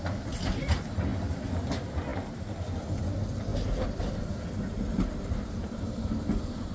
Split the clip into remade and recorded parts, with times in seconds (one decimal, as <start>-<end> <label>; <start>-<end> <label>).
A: 0.0-6.7 recorded